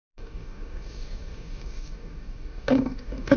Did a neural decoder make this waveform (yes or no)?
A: yes